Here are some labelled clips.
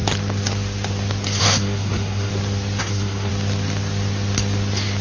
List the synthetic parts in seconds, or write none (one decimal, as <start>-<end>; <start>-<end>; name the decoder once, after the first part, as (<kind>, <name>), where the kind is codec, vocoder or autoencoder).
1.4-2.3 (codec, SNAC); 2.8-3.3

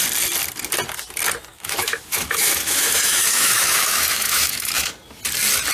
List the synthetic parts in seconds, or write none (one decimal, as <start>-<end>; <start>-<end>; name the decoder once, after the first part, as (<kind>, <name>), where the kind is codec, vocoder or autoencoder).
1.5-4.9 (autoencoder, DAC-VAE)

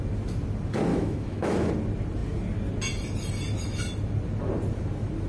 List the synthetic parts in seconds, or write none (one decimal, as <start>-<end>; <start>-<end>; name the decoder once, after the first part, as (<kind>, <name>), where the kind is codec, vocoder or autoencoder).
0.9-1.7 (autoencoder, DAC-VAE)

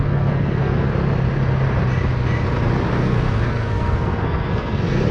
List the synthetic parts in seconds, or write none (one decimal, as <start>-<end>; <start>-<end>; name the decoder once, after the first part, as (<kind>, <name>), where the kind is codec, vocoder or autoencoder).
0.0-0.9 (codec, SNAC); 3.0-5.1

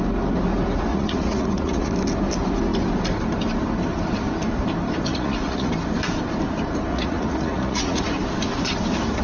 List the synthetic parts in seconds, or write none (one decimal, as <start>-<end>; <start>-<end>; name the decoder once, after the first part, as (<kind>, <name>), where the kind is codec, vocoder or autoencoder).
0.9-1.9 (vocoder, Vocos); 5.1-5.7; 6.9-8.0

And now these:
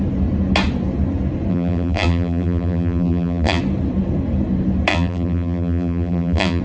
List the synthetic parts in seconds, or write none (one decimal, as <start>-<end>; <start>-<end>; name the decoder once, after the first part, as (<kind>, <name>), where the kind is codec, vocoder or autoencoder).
1.5-3.6 (vocoder, BigVGAN v2); 4.9-6.6

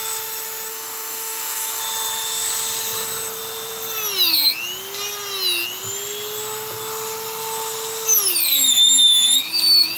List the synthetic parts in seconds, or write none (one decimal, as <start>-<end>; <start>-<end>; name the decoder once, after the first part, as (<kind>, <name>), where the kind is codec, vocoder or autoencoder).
0.7-1.8 (codec, DAC)

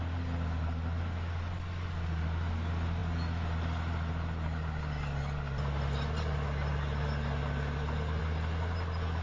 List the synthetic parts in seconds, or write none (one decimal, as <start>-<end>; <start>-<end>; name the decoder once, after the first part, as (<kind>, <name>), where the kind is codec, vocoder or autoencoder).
none